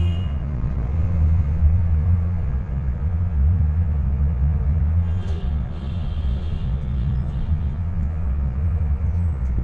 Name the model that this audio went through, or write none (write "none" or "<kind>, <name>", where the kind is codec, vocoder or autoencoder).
vocoder, Vocos